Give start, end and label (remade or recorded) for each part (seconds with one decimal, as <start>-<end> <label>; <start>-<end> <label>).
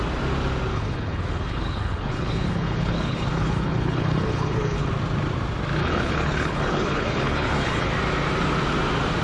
0.0-0.7 recorded; 0.7-4.9 remade; 4.9-5.8 recorded; 5.8-7.9 remade; 7.9-9.2 recorded